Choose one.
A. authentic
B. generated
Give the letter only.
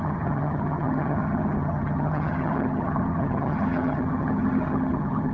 B